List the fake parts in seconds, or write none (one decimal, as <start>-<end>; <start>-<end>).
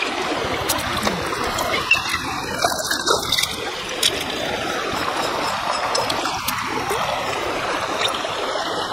none